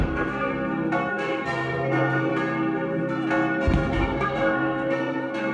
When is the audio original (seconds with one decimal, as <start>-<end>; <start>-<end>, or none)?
0.5-1.1; 2.3-3.9